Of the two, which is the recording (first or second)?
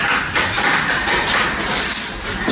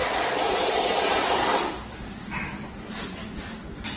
first